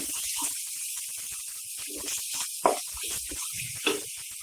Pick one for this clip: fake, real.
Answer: real